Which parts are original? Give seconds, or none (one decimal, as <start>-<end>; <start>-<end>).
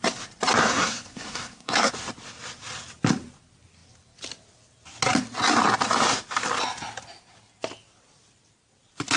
0.0-0.6; 1.9-9.2